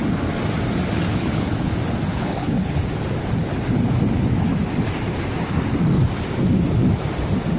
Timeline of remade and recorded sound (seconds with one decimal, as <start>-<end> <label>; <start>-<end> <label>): 0.0-1.1 recorded; 1.1-1.7 remade; 1.7-2.1 recorded; 2.1-2.8 remade; 2.8-7.6 recorded